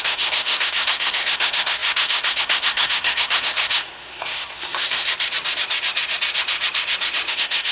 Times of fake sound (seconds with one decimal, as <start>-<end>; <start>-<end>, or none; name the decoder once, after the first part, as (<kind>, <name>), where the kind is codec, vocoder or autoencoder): 0.0-5.1 (codec, SNAC); 7.3-7.7